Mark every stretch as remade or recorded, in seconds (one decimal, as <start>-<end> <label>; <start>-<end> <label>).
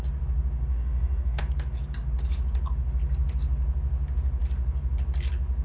0.0-0.7 recorded; 0.7-1.4 remade; 1.4-5.6 recorded